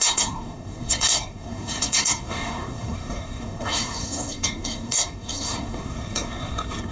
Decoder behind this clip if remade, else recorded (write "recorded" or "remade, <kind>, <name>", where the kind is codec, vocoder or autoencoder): remade, codec, SNAC